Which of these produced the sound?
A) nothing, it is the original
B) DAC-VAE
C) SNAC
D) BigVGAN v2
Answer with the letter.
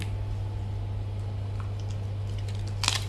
A